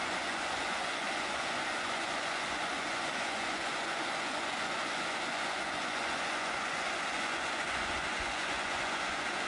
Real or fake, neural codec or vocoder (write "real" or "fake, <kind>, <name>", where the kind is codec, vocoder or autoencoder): fake, vocoder, Vocos